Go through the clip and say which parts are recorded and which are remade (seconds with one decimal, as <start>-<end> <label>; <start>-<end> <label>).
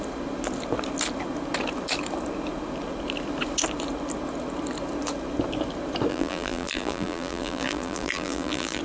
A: 0.0-6.1 recorded; 6.1-8.8 remade